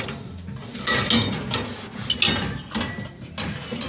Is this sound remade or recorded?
recorded